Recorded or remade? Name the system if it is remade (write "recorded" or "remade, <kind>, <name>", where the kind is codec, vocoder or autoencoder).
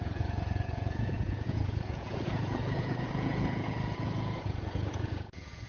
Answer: remade, vocoder, Vocos